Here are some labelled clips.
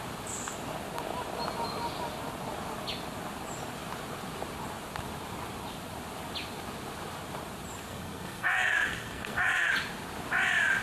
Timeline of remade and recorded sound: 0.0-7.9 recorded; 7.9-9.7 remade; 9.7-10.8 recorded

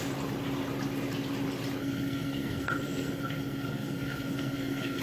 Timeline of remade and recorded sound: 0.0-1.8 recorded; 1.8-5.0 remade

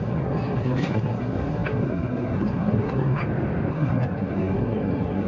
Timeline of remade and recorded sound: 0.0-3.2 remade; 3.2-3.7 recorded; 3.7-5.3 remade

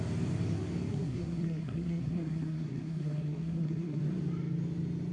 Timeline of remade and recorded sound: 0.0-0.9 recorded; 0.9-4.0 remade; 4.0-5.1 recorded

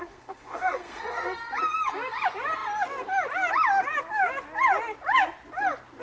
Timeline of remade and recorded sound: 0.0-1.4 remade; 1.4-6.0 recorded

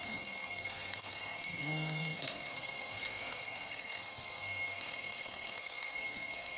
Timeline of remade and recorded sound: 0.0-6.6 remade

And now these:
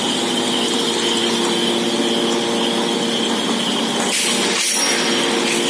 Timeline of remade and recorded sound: 0.0-5.7 recorded